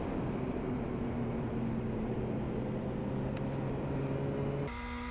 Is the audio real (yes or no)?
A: yes